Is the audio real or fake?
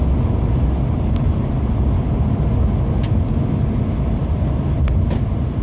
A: real